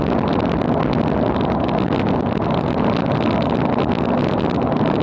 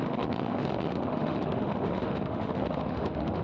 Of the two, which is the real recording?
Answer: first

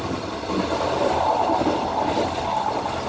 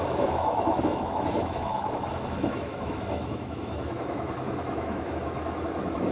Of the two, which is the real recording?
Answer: first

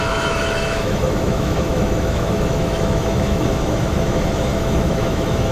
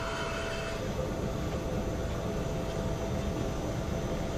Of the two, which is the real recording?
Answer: second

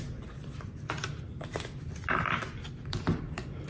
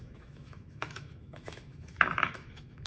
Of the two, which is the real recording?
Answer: first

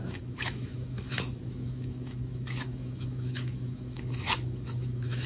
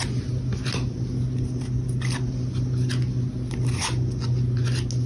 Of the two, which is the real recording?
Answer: second